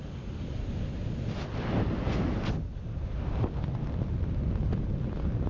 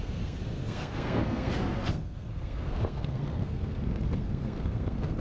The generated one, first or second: second